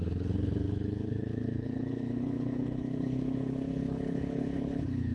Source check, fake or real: fake